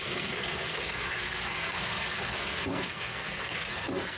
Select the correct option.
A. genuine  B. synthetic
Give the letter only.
B